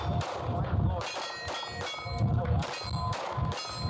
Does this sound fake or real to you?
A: real